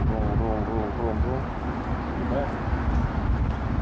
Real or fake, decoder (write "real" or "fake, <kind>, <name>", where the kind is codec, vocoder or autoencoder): real